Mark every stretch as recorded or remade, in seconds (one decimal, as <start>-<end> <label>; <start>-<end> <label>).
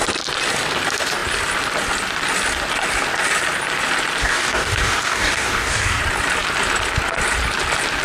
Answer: 0.0-4.2 recorded; 4.2-6.0 remade; 6.0-8.0 recorded